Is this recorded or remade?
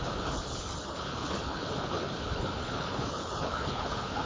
remade